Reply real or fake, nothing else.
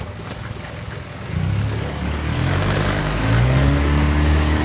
fake